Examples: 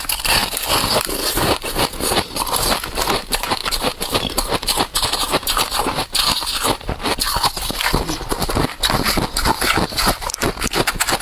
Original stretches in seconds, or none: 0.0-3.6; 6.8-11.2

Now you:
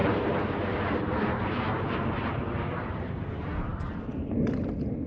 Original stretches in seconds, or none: 3.1-5.1

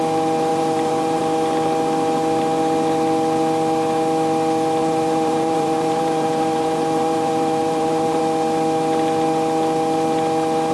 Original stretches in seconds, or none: 0.0-0.5; 1.2-4.8; 8.2-10.7

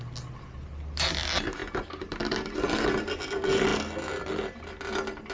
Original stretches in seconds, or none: 0.0-5.3

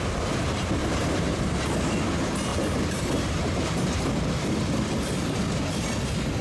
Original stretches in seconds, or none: 0.0-0.8; 1.5-2.5; 5.4-6.4

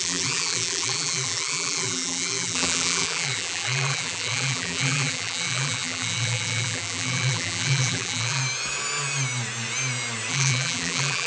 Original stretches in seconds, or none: 8.4-10.3